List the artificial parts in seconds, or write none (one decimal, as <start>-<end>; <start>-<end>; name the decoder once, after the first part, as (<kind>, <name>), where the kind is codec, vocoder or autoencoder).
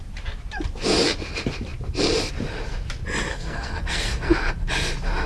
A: 3.3-4.5 (codec, SNAC)